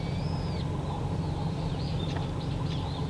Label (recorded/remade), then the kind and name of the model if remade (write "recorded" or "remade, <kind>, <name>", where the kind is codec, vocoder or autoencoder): recorded